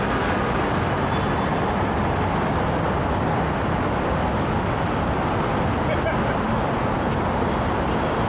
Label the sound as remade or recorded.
recorded